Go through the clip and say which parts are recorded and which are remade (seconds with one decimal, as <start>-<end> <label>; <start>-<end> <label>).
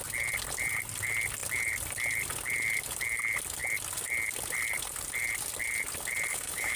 0.0-6.3 recorded; 6.3-6.8 remade